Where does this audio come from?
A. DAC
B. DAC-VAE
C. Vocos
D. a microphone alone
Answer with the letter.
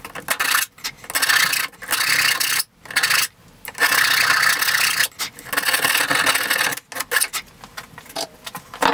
D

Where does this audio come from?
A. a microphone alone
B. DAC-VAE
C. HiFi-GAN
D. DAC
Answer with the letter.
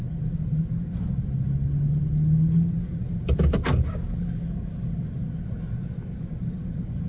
A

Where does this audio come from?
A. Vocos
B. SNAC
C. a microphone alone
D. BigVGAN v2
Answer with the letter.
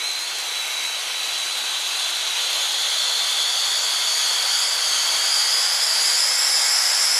C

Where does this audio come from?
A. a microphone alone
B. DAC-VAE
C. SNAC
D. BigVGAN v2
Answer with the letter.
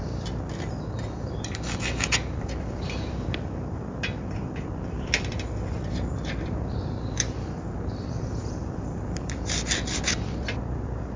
D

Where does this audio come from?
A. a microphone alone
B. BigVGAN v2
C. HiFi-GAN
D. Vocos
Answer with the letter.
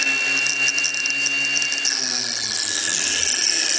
A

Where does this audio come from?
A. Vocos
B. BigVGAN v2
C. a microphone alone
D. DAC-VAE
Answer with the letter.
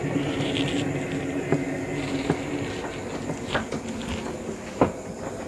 C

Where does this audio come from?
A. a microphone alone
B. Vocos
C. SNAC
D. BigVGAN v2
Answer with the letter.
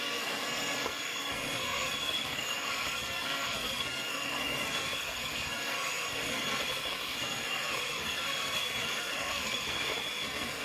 C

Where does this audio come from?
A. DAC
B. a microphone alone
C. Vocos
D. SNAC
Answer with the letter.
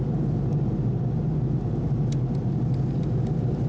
B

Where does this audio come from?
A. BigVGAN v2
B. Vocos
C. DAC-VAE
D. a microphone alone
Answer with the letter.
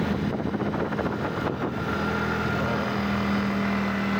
D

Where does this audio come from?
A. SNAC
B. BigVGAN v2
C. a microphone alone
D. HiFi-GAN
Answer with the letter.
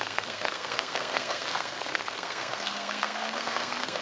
A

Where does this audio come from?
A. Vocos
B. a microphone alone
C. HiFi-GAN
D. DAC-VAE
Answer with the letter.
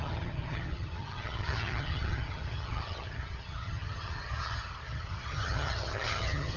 C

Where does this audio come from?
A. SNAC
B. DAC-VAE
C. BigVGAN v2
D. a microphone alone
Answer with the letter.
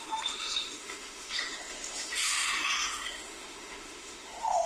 B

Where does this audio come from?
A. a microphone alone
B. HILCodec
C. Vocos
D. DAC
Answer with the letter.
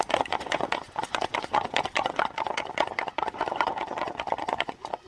C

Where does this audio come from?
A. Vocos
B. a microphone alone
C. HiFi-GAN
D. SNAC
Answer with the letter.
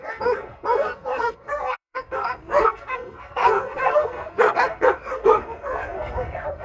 D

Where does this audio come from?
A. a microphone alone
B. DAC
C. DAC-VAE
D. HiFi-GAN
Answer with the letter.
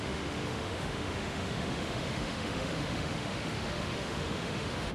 C